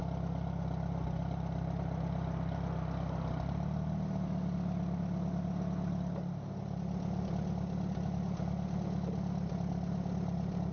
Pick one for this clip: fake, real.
real